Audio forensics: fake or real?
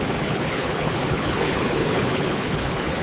fake